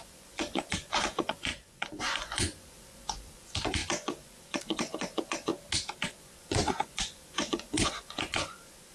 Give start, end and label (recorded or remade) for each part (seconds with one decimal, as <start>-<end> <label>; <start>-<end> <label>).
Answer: 0.0-5.5 remade; 5.5-6.1 recorded; 6.1-8.9 remade